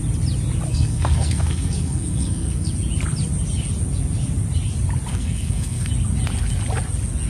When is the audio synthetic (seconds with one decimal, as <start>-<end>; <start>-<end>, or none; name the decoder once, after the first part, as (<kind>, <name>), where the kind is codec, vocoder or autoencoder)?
0.7-2.7 (codec, SNAC); 5.1-5.9